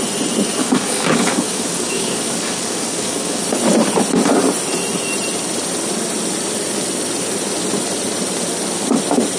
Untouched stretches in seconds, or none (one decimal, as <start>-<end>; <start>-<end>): 0.0-0.6; 3.4-9.4